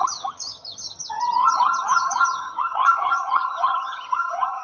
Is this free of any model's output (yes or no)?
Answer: no